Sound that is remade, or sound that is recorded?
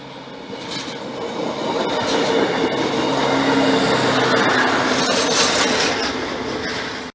recorded